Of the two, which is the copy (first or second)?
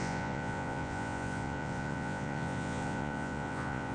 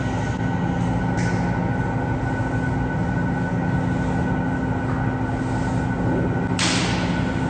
first